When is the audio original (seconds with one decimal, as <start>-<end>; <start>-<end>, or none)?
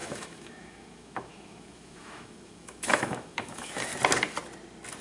3.9-5.0